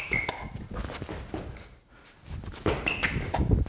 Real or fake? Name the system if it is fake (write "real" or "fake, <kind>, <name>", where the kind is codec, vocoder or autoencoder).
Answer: real